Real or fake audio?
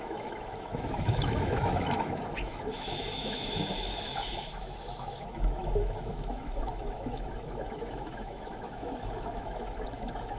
fake